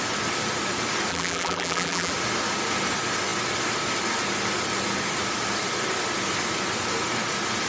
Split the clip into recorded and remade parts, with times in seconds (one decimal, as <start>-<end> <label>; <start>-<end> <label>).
0.0-1.1 recorded; 1.1-2.1 remade; 2.1-7.7 recorded